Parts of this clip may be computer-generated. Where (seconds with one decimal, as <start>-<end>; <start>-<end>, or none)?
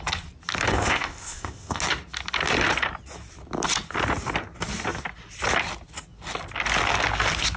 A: 0.7-1.8